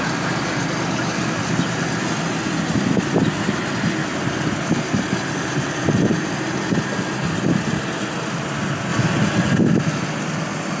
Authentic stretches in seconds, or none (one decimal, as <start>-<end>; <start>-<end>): 0.0-10.8